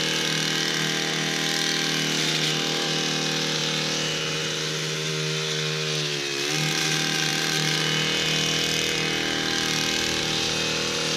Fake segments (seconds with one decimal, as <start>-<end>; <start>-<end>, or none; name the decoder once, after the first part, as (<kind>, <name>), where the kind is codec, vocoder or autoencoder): none